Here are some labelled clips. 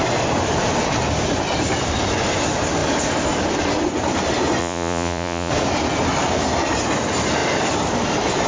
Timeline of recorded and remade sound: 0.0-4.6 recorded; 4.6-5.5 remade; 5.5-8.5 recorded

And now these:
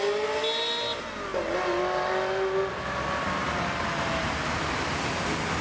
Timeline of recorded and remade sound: 0.0-5.6 recorded

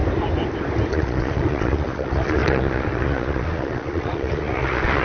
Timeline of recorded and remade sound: 0.0-0.9 recorded; 0.9-5.0 remade

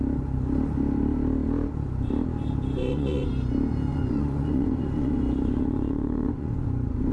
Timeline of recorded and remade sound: 0.0-2.8 recorded; 2.8-3.3 remade; 3.3-3.9 recorded; 3.9-7.1 remade

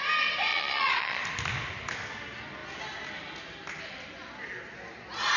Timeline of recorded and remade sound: 0.0-0.5 recorded; 0.5-1.2 remade; 1.2-5.4 recorded

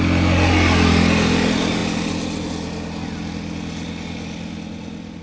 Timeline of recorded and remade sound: 0.0-5.2 recorded